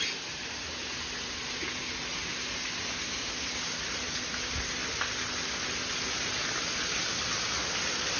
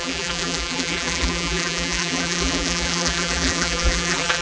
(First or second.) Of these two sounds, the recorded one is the first